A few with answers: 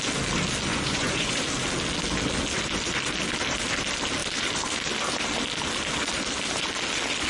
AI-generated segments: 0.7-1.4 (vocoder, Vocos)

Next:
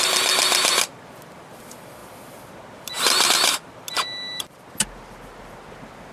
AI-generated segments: none

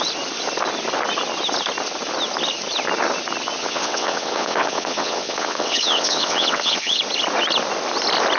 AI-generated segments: 3.6-7.0 (vocoder, WaveNeXt)

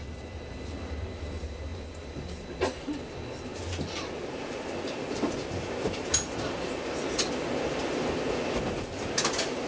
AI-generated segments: none